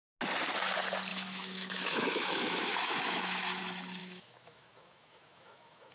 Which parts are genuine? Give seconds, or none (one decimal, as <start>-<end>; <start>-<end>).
0.0-1.1; 3.6-4.0